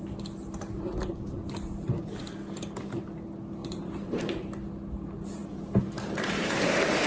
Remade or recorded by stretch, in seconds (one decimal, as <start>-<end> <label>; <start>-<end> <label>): 0.0-3.6 recorded; 3.6-4.2 remade; 4.2-7.1 recorded